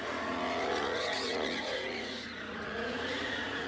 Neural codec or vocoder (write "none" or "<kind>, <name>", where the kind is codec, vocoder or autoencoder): vocoder, Vocos